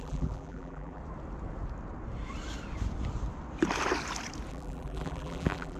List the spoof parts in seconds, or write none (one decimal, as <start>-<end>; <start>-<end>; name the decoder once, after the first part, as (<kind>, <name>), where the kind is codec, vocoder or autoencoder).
0.0-1.0 (vocoder, BigVGAN v2); 4.5-5.8